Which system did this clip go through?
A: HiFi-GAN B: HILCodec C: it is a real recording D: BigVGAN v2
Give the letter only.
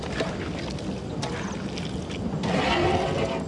C